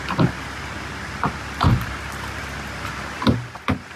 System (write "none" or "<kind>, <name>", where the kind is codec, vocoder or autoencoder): none